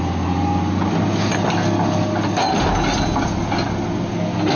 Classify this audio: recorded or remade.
recorded